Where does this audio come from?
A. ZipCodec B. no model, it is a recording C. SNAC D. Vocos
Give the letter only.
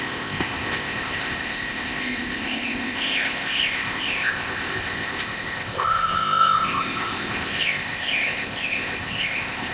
A